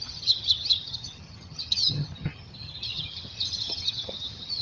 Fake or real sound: fake